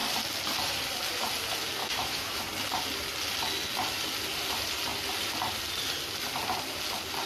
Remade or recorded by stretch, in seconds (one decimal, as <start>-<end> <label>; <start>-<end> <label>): 0.0-1.8 recorded; 1.8-2.4 remade; 2.4-7.3 recorded